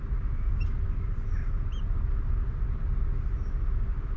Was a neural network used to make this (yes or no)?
no